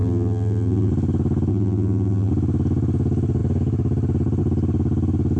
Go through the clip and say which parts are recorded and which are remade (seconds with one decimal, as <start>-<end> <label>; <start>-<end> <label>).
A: 0.0-0.9 remade; 0.9-1.5 recorded; 1.5-2.3 remade; 2.3-5.4 recorded